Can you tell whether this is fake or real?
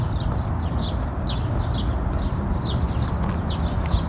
real